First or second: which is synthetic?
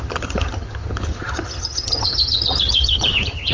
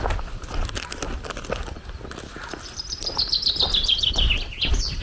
first